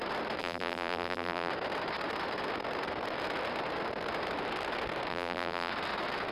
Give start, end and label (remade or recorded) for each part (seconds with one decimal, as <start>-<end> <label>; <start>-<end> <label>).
0.0-0.4 recorded; 0.4-1.5 remade; 1.5-5.1 recorded; 5.1-5.7 remade; 5.7-6.3 recorded